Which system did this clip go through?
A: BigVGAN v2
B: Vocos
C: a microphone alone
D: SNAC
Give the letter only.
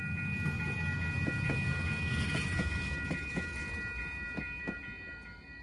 C